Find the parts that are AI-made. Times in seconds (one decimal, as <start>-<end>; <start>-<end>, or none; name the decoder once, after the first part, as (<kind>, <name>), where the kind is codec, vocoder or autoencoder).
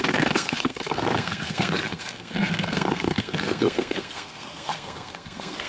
0.0-5.7 (codec, SNAC)